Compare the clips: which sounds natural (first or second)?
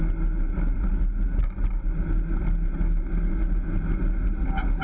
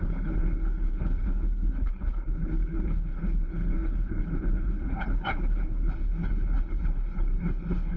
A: first